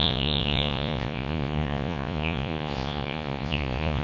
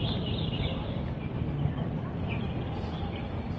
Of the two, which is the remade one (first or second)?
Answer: first